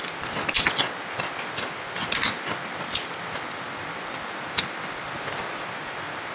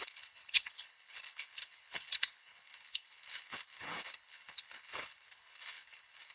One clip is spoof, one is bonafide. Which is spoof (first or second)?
second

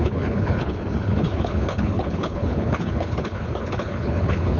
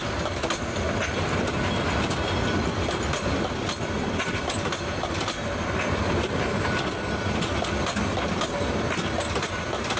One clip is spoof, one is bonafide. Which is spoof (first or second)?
first